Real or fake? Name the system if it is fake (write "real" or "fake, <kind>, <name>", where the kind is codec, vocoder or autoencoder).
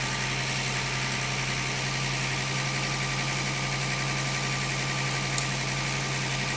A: real